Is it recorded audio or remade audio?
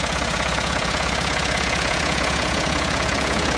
remade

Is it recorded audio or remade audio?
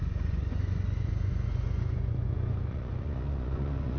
remade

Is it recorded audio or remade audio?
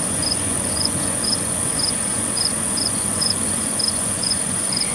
remade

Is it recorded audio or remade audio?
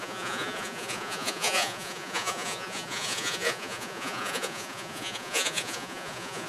remade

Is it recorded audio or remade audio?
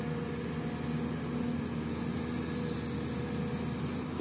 recorded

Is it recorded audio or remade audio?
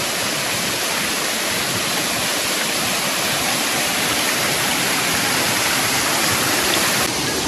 recorded